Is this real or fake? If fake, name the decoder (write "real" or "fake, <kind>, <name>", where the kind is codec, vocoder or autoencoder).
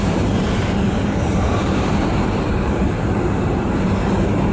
fake, vocoder, BigVGAN v2